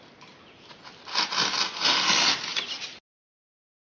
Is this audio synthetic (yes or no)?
no